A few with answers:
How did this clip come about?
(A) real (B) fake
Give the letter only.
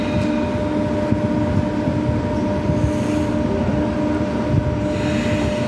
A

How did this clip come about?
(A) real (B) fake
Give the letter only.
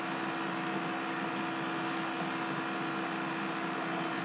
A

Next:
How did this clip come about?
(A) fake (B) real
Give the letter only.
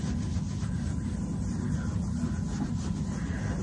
B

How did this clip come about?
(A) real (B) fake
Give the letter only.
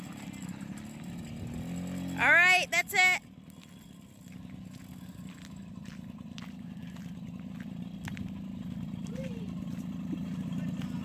A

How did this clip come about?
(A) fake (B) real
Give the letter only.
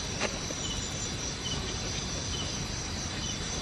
B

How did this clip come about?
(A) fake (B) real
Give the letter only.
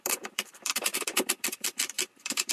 A